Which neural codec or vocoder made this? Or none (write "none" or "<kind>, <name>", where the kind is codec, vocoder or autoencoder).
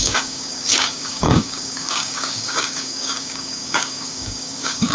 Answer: codec, DAC